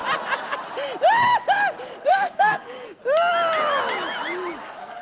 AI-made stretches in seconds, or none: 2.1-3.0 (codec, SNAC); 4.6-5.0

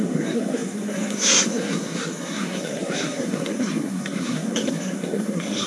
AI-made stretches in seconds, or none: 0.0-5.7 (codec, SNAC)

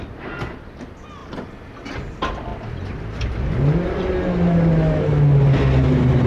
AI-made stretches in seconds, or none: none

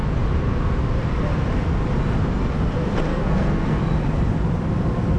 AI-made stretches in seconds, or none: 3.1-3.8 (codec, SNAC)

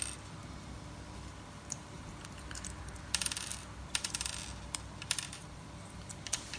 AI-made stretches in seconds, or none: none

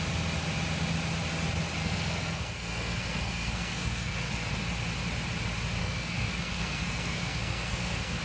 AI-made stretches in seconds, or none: 1.8-4.3 (codec, SNAC); 5.8-8.2